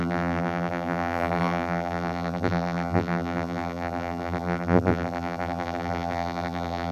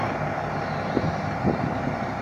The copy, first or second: first